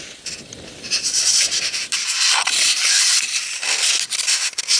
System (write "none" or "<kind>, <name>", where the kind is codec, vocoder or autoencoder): none